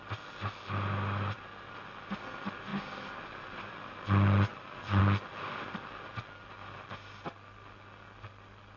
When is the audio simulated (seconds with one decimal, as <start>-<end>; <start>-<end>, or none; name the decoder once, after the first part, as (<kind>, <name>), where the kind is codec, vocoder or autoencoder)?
2.7-3.9 (vocoder, BigVGAN v2); 4.5-5.0